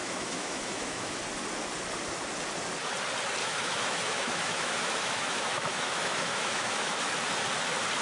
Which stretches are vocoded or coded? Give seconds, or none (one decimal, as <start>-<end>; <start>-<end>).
0.0-1.2; 3.4-7.1